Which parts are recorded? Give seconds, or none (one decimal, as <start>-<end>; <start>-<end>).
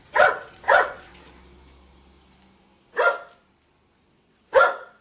1.1-4.1